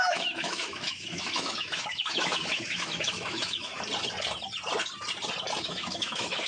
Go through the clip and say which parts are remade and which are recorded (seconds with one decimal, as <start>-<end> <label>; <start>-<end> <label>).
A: 0.0-3.7 remade; 3.7-5.6 recorded; 5.6-6.5 remade